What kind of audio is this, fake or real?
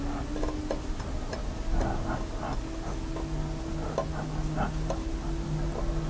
real